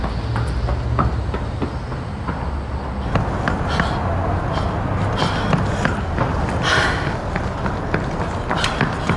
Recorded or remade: recorded